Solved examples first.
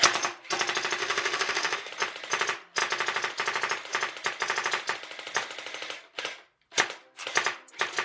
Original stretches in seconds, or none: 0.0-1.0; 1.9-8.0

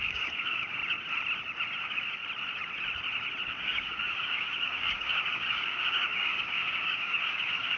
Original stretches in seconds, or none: 0.8-1.8; 2.2-3.6